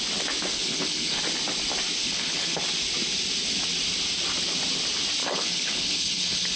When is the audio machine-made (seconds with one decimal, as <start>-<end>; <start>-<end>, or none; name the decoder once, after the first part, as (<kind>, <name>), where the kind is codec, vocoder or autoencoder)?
0.5-1.2 (codec, HILCodec); 2.0-2.6; 5.2-6.6